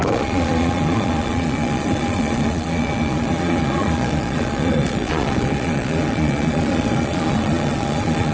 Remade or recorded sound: remade